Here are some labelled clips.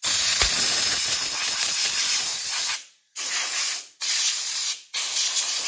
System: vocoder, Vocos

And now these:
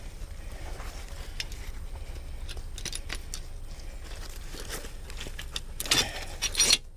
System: none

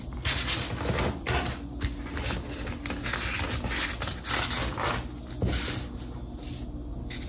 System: none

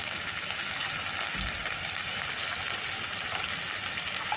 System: none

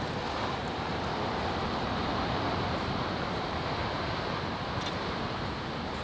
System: vocoder, BigVGAN v2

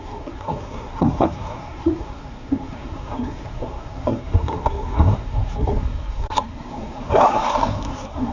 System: codec, SNAC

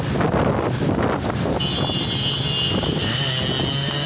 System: none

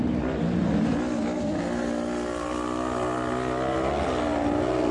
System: none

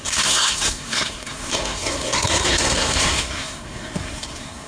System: codec, SNAC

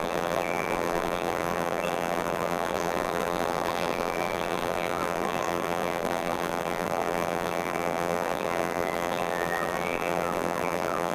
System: vocoder, BigVGAN v2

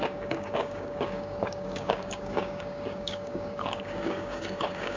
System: codec, DAC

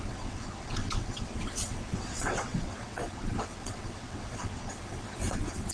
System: vocoder, WaveNeXt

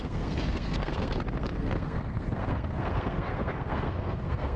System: codec, SNAC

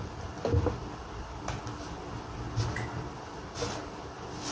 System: none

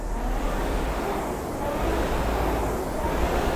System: none